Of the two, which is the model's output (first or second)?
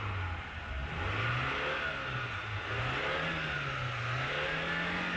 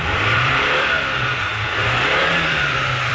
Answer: second